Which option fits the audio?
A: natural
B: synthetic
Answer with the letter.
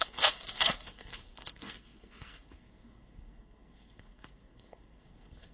B